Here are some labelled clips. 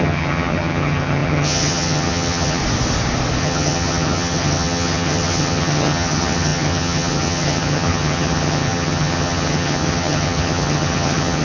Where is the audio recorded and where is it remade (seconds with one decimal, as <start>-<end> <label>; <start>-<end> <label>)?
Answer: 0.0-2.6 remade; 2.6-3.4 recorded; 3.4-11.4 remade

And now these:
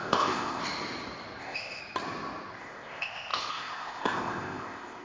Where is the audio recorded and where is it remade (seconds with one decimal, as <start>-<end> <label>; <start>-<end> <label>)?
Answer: 0.0-0.6 remade; 0.6-1.4 recorded; 1.4-1.8 remade; 1.8-2.6 recorded; 2.6-5.0 remade

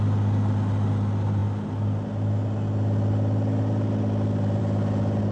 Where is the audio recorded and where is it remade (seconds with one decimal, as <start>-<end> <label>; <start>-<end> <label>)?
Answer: 0.0-5.3 recorded